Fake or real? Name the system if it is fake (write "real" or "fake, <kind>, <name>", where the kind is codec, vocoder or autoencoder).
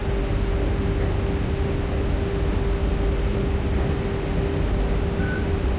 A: real